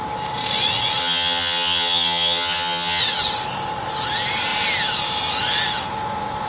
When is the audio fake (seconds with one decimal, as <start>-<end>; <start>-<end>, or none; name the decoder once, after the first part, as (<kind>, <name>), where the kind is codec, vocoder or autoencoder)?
1.0-3.0 (vocoder, HiFi-GAN)